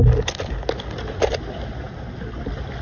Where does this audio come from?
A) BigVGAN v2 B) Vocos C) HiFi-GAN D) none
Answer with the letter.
D